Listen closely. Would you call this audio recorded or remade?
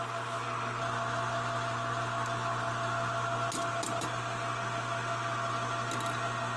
recorded